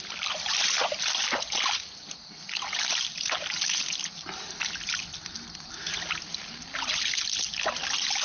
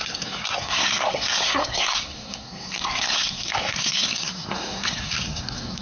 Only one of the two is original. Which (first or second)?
first